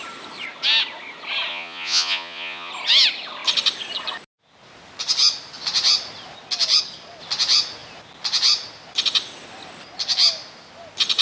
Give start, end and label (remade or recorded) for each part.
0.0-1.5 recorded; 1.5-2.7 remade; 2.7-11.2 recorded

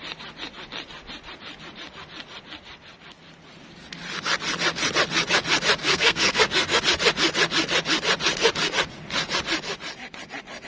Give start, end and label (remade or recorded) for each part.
0.0-5.8 recorded; 5.8-6.8 remade; 6.8-10.7 recorded

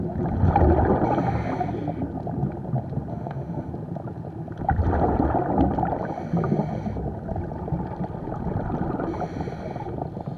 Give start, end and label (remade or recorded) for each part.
0.0-3.1 recorded; 3.1-3.7 remade; 3.7-10.4 recorded

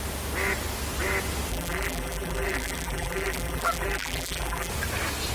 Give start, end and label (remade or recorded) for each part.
0.0-1.5 recorded; 1.5-4.7 remade; 4.7-5.3 recorded

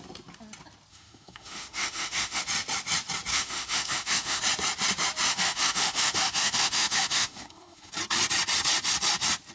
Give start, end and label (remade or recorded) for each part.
0.0-0.9 recorded; 0.9-2.4 remade; 2.4-3.3 recorded; 3.3-4.4 remade; 4.4-5.3 recorded; 5.3-7.9 remade; 7.9-9.5 recorded

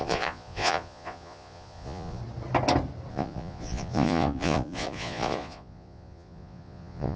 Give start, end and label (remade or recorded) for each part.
0.0-2.2 remade; 2.2-3.1 recorded; 3.1-7.2 remade

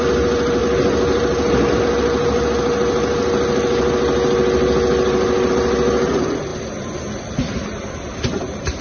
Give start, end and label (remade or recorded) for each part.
0.0-6.5 recorded; 6.5-8.8 remade